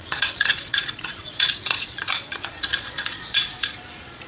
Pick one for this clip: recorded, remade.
remade